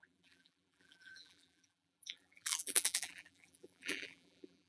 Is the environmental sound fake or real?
fake